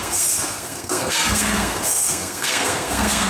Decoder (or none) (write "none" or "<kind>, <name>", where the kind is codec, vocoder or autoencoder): codec, SNAC